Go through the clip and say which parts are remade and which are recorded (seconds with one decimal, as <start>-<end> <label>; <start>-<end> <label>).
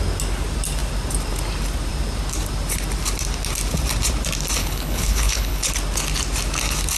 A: 0.0-4.6 recorded; 4.6-5.7 remade; 5.7-7.0 recorded